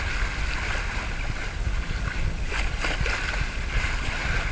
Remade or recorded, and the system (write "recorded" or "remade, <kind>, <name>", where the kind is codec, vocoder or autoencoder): recorded